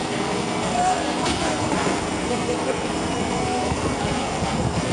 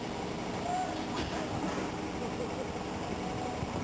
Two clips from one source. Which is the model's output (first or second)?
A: first